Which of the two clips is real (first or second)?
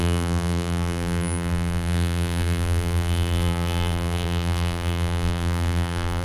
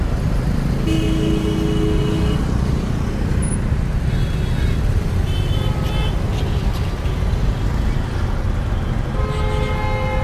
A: second